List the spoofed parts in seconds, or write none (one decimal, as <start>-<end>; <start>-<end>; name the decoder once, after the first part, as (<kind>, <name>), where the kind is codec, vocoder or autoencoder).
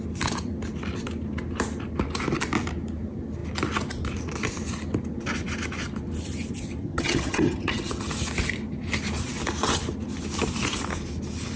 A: 6.8-8.1 (vocoder, HiFi-GAN)